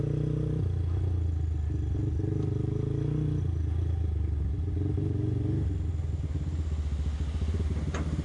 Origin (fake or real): real